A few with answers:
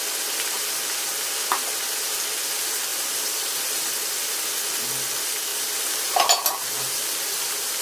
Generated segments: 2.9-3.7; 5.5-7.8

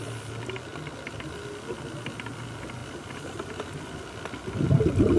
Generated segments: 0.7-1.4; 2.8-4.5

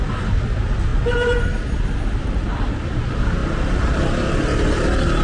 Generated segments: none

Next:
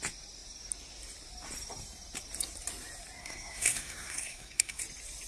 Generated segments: 3.2-4.8

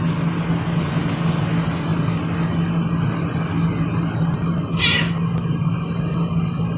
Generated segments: none

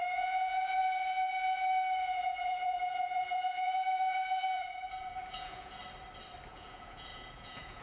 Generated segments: 0.0-5.8; 6.5-7.8

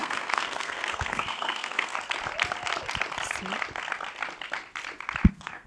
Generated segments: 0.0-1.9; 5.3-5.7